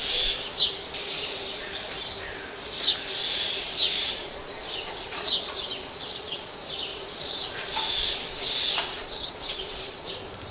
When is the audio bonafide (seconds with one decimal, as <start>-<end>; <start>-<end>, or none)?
0.0-3.2; 6.5-6.9; 10.1-10.5